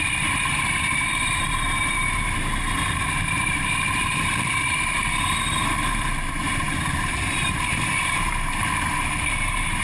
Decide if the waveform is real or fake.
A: fake